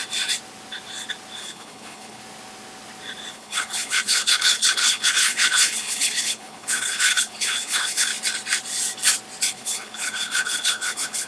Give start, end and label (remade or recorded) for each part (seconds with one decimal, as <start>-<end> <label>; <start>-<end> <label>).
0.0-1.4 recorded; 1.4-2.2 remade; 2.2-3.3 recorded; 3.3-8.1 remade; 8.1-9.5 recorded; 9.5-11.3 remade